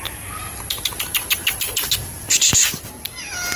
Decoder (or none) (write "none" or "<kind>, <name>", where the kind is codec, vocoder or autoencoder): none